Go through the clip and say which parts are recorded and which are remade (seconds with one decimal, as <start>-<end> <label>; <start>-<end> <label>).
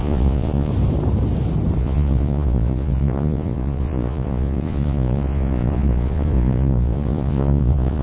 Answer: 0.0-0.7 remade; 0.7-1.8 recorded; 1.8-8.0 remade